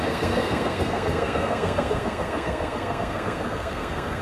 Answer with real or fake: fake